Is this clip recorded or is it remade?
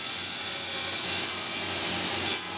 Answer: recorded